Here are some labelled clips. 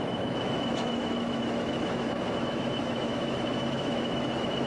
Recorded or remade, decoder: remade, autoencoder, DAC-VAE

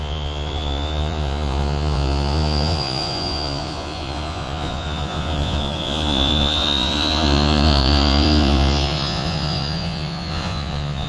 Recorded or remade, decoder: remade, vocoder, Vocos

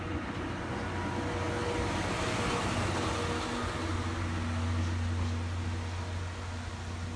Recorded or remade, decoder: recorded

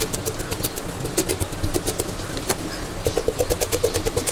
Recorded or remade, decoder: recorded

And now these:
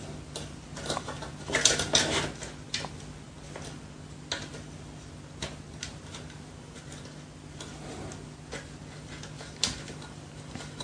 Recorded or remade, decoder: recorded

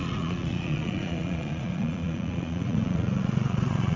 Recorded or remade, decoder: remade, vocoder, Vocos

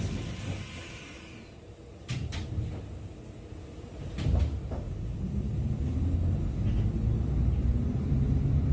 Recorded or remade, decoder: recorded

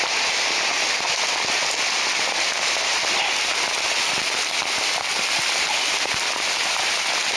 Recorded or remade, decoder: recorded